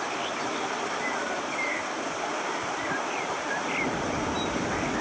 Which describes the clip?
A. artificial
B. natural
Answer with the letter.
B